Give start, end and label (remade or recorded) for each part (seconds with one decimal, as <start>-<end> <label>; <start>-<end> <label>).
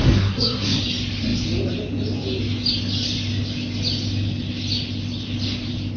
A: 0.0-0.8 remade; 0.8-6.0 recorded